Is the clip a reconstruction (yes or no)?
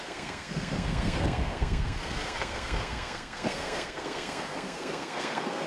yes